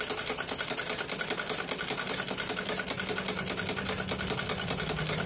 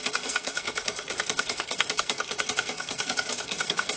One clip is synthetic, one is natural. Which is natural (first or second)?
first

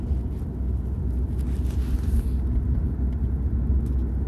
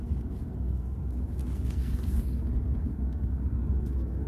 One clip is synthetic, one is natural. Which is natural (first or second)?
first